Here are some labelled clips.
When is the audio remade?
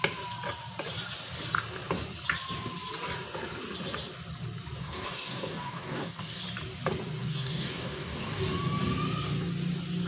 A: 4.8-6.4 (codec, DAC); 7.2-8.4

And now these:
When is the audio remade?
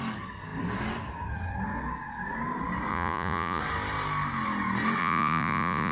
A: 2.9-3.6 (vocoder, Vocos); 5.0-5.9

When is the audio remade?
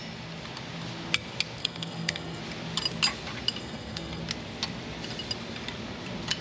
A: 1.6-2.4 (codec, SNAC); 3.6-4.2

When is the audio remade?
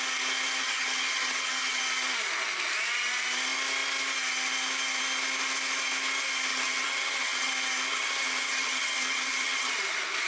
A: 0.6-1.8 (vocoder, HiFi-GAN); 6.5-7.5; 7.9-9.8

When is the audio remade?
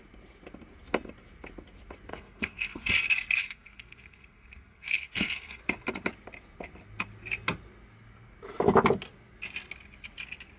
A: 2.1-2.9 (codec, SNAC); 3.4-5.6